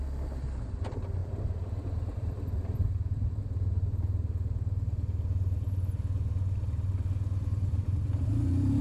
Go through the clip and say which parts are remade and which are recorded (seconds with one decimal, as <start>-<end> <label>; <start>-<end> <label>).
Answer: 0.0-1.2 recorded; 1.2-3.4 remade; 3.4-8.8 recorded